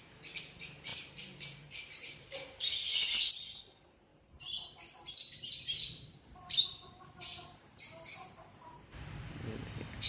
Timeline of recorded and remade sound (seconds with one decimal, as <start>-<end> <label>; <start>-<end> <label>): 0.0-0.9 recorded; 0.9-3.0 remade; 3.0-4.1 recorded; 4.1-8.8 remade; 8.8-10.1 recorded